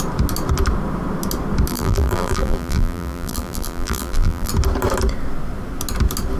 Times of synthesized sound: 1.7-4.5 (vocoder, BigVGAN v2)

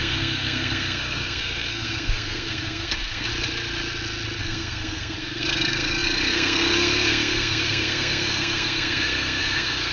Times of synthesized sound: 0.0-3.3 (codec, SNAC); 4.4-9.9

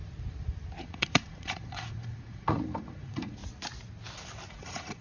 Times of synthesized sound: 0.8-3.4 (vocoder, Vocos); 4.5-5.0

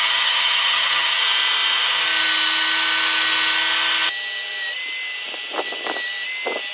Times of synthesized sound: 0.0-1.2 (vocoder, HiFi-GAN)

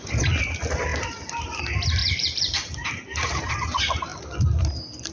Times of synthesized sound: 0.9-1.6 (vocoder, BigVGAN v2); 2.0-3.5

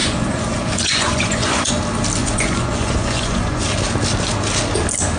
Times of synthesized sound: 0.0-1.7 (vocoder, Vocos); 2.2-3.6

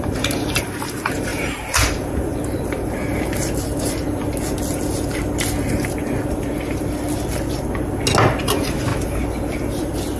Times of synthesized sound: 0.0-3.1 (vocoder, BigVGAN v2); 8.4-8.9

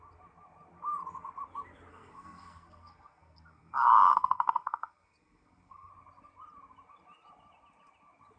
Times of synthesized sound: 1.9-5.9 (codec, SNAC)